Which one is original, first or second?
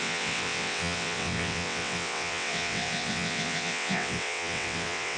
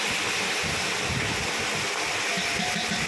second